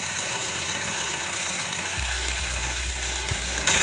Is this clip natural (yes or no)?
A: no